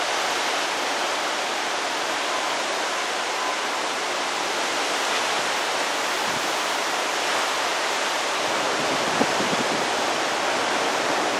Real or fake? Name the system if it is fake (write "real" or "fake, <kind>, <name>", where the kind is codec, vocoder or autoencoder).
real